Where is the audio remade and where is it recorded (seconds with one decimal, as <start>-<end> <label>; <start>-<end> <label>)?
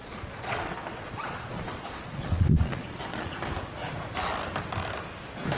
0.0-3.4 remade; 3.4-5.6 recorded